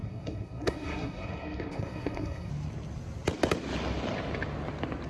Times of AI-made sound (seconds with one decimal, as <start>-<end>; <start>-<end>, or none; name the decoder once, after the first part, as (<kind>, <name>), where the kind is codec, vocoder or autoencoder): 0.0-2.5 (codec, SNAC)